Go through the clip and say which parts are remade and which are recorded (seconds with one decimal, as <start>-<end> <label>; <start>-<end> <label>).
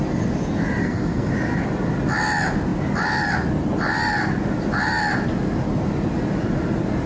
0.0-0.8 recorded; 0.8-1.3 remade; 1.3-7.1 recorded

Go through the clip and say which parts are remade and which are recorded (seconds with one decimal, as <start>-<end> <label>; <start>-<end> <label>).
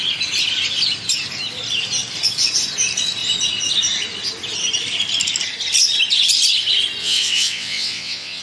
0.0-7.0 recorded; 7.0-8.4 remade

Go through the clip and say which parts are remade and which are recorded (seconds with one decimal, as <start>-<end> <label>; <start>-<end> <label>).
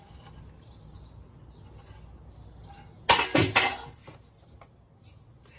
0.0-5.6 recorded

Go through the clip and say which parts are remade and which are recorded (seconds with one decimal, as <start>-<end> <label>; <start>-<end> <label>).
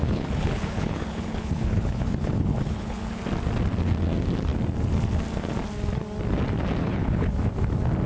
0.0-3.2 remade; 3.2-6.8 recorded; 6.8-7.3 remade; 7.3-8.1 recorded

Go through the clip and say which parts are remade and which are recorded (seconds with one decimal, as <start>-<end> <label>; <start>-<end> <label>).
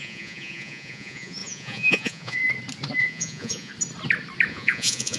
0.0-2.4 remade; 2.4-3.0 recorded; 3.0-3.7 remade; 3.7-4.5 recorded; 4.5-5.2 remade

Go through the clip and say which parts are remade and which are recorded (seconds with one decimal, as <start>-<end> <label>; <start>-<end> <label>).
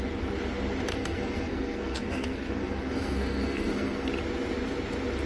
0.0-0.9 recorded; 0.9-4.1 remade; 4.1-5.3 recorded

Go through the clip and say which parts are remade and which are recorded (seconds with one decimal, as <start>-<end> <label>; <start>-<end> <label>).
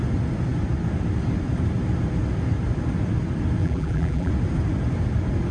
0.0-3.6 recorded; 3.6-4.3 remade; 4.3-5.5 recorded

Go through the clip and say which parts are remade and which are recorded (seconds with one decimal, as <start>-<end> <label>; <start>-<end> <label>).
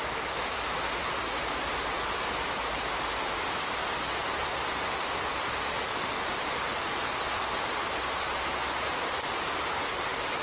0.0-10.4 recorded